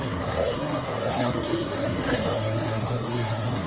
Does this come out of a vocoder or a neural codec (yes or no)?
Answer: yes